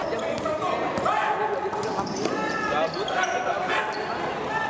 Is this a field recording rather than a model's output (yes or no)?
yes